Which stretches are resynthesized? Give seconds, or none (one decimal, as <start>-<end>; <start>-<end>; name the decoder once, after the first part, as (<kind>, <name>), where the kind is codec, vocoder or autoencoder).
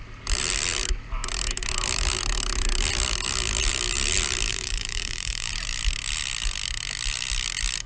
4.5-5.5 (vocoder, BigVGAN v2)